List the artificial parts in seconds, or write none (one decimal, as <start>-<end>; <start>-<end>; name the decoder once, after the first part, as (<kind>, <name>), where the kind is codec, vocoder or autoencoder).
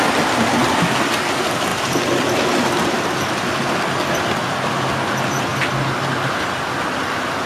none